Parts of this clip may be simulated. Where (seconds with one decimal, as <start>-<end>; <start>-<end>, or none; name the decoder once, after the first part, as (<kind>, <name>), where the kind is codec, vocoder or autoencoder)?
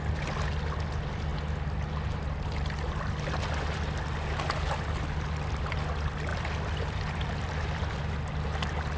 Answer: 6.3-8.1 (vocoder, BigVGAN v2)